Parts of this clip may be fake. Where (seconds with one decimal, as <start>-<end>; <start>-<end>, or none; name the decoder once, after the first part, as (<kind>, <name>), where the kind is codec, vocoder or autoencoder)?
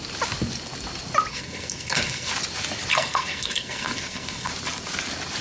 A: 1.3-2.3 (codec, SNAC); 2.9-4.5